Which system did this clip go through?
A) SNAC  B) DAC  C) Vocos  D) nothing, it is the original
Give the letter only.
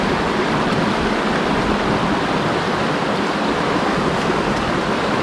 D